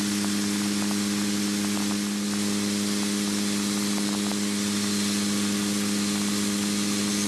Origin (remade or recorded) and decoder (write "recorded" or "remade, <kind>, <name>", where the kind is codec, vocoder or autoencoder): recorded